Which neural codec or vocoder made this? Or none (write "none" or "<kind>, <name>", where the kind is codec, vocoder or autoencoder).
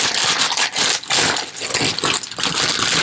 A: none